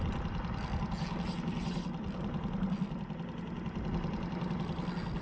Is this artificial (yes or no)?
no